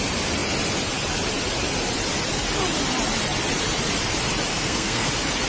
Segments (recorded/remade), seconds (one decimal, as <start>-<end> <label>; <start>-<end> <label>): 0.0-4.5 recorded; 4.5-5.1 remade; 5.1-5.5 recorded